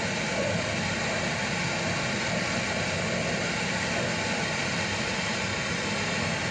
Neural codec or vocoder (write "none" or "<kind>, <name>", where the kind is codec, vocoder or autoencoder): none